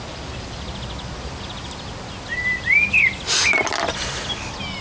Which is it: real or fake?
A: real